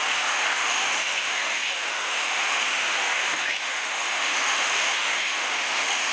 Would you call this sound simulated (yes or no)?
yes